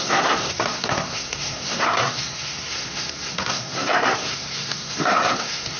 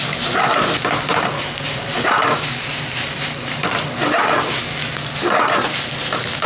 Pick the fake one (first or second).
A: first